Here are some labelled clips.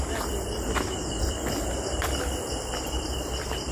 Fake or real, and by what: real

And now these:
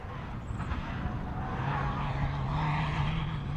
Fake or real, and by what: real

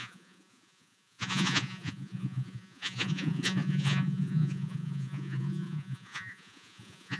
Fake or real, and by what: fake, vocoder, Vocos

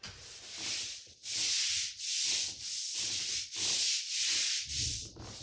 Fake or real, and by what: real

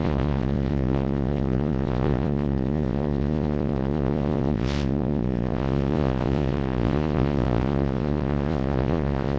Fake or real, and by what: fake, vocoder, Vocos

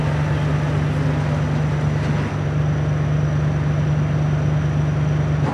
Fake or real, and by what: real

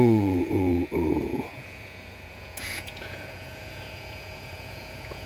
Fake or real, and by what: fake, vocoder, Vocos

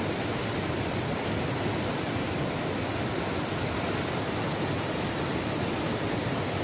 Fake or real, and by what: real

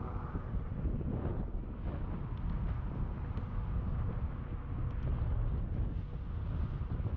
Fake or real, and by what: real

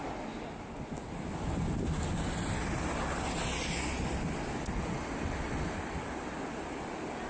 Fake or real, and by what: real